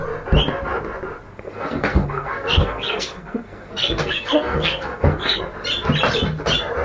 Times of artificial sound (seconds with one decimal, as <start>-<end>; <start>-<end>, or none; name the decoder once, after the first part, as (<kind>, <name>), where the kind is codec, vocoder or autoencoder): 1.3-5.4 (codec, SNAC)